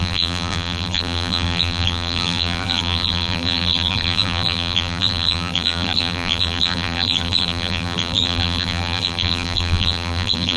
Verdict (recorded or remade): remade